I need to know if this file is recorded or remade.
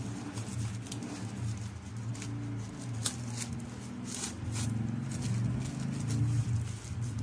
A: recorded